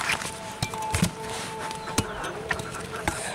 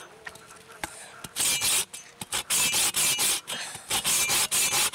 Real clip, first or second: second